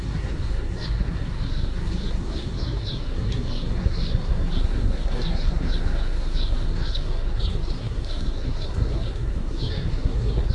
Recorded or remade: remade